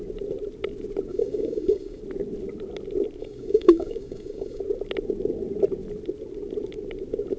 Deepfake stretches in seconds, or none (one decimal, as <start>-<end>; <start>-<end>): 1.1-2.0; 3.2-4.6

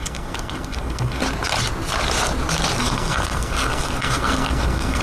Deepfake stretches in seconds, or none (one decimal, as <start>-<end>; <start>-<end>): 0.0-1.2; 2.8-5.0